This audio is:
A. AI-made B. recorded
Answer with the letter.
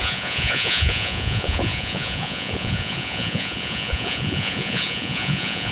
A